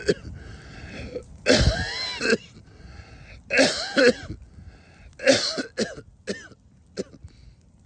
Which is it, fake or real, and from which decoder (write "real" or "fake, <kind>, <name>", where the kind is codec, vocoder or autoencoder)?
real